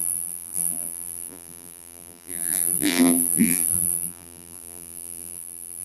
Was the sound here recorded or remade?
remade